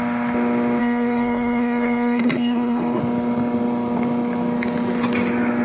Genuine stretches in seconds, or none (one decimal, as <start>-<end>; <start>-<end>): 0.0-0.8; 3.0-5.6